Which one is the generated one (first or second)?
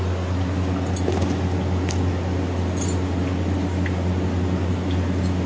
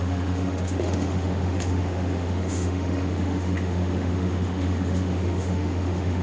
second